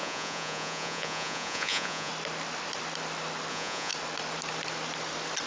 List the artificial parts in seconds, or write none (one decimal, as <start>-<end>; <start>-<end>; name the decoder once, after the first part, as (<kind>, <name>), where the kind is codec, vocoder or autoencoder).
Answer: 0.0-2.1 (vocoder, Vocos); 3.5-3.9